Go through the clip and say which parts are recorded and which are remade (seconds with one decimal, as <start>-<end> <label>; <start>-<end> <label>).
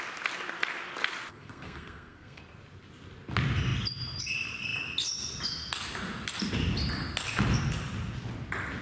0.0-1.3 recorded; 1.3-2.4 remade; 2.4-8.8 recorded